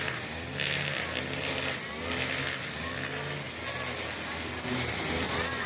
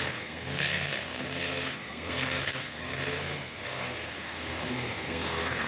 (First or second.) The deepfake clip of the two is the second